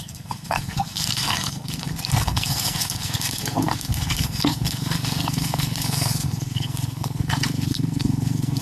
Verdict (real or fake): fake